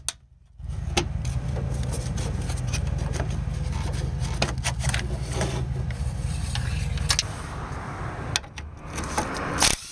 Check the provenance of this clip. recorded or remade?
recorded